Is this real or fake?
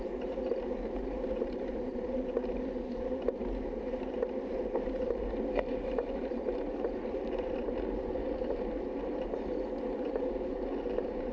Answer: fake